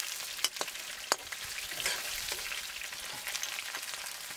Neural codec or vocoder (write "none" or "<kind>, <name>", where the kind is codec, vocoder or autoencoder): none